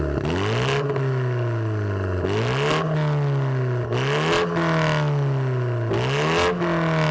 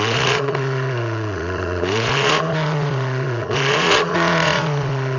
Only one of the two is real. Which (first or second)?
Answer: first